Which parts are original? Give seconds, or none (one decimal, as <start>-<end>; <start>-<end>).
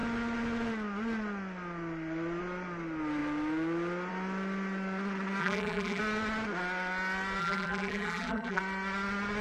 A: 0.0-5.4; 6.0-7.4; 8.6-9.4